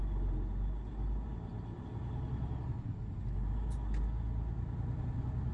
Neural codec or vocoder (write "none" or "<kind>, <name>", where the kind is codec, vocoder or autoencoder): none